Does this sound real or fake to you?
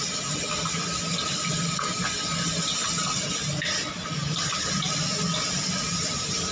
real